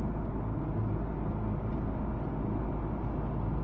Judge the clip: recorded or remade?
recorded